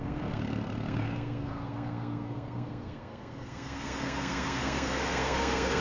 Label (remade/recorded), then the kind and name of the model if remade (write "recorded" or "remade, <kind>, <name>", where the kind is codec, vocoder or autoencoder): remade, codec, SNAC